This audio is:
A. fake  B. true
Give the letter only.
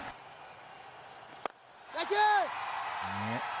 B